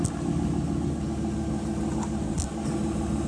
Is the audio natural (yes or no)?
yes